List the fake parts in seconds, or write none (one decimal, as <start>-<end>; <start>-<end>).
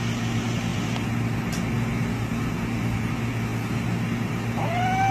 none